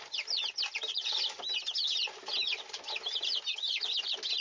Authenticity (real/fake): real